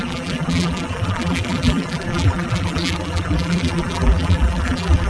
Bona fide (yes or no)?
no